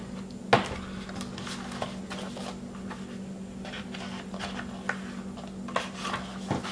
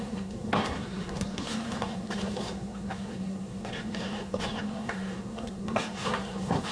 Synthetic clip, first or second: second